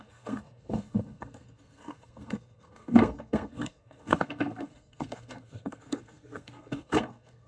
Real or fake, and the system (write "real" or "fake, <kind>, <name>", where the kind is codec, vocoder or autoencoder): fake, codec, SNAC